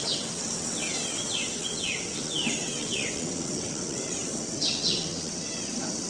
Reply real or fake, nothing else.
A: fake